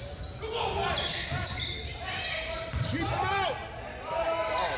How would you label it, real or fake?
real